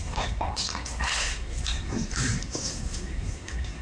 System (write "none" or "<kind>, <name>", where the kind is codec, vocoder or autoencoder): codec, SNAC